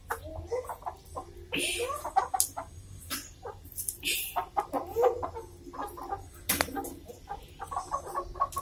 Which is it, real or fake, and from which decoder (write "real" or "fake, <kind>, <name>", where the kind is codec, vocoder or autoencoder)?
real